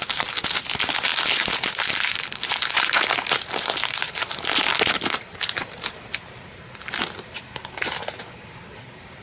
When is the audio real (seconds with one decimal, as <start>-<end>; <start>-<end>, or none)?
0.0-9.2